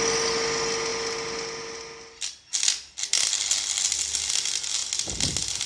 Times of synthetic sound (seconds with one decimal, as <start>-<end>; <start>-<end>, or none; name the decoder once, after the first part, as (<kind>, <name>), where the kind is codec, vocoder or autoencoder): none